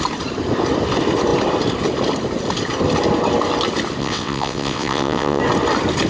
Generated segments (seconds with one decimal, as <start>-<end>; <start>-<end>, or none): 4.0-5.4